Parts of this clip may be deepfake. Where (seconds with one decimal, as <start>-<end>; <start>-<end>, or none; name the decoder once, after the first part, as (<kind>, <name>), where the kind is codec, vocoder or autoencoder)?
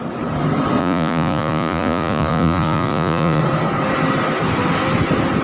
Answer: 0.8-3.4 (vocoder, Vocos)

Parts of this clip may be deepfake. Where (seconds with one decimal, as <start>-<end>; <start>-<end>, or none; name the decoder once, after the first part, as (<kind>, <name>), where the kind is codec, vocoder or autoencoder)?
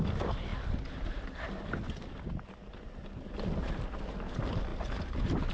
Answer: none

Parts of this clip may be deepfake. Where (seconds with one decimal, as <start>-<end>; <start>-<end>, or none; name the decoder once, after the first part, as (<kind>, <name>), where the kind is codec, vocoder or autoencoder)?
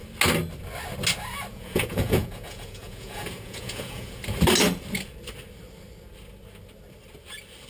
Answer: 1.5-4.2 (vocoder, Vocos)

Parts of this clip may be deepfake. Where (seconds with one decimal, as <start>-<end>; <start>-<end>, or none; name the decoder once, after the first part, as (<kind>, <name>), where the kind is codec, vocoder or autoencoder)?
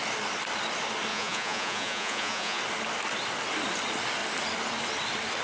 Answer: 1.1-2.6 (vocoder, Vocos)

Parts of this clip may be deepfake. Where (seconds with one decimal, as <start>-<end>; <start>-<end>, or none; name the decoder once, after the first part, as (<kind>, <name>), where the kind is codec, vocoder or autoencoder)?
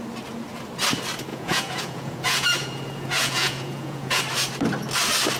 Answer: 1.3-4.2 (vocoder, Vocos)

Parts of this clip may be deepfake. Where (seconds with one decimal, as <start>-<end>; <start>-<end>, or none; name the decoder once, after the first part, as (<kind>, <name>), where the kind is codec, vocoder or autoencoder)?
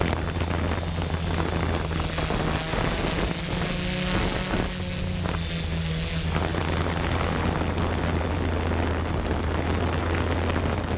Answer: none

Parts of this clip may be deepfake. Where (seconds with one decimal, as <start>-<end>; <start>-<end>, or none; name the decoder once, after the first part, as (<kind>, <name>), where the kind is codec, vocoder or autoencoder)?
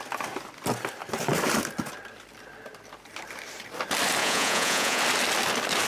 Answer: 4.2-5.0 (vocoder, Vocos)